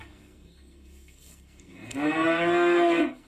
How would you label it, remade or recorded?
remade